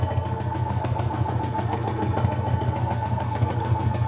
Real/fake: fake